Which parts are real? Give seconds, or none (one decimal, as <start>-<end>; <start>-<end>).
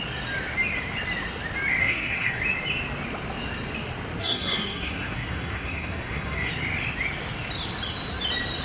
0.0-1.8; 2.4-4.2; 6.5-8.6